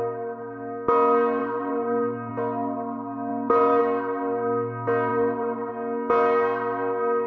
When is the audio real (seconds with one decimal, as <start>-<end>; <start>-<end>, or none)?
0.0-1.4; 2.3-3.3; 3.8-5.1; 5.7-7.3